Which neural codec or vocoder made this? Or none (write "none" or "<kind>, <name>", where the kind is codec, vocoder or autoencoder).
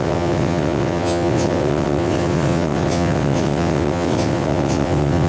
vocoder, WaveNeXt